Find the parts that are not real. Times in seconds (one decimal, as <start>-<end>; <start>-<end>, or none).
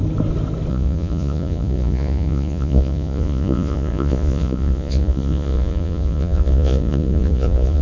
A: 0.7-7.8